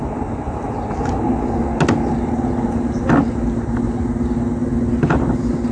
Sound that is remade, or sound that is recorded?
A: recorded